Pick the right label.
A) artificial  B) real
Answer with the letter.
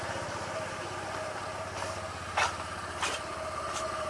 A